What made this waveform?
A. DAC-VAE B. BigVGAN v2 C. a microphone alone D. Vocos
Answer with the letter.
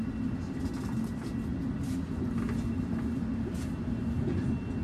C